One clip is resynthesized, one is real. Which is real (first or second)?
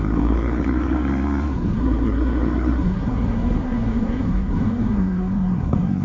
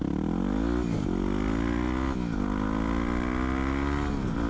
second